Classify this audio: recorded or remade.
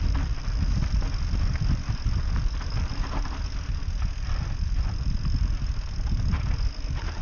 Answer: recorded